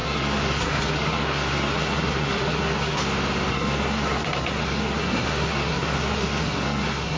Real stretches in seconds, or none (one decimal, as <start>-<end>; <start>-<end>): 3.0-3.5